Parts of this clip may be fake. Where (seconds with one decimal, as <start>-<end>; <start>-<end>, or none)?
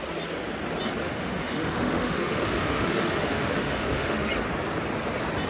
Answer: 1.0-4.3